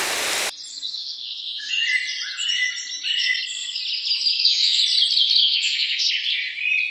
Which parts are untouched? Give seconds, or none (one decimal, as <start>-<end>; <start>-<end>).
0.0-0.7; 1.7-3.2; 3.8-4.3; 4.8-5.4; 6.1-6.9